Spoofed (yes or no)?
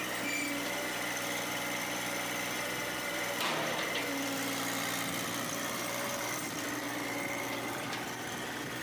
yes